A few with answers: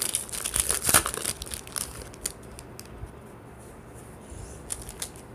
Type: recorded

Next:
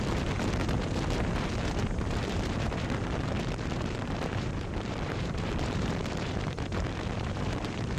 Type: remade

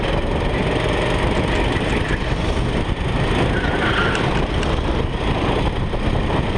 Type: recorded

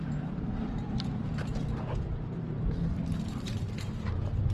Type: remade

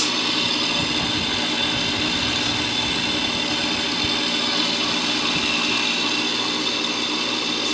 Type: recorded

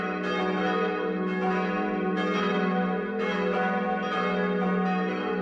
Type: recorded